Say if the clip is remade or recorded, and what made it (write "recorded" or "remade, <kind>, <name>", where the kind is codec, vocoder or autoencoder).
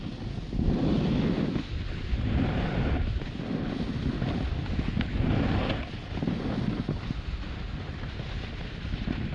recorded